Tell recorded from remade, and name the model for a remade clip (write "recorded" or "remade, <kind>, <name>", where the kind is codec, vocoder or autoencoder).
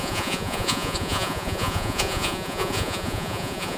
remade, vocoder, Vocos